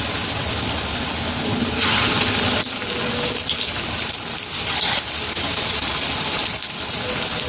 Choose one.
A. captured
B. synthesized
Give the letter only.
A